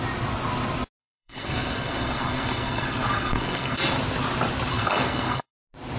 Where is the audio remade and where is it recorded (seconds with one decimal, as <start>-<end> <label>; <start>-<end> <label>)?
0.0-1.0 recorded; 1.0-3.8 remade; 3.8-4.7 recorded; 4.7-5.5 remade; 5.5-6.0 recorded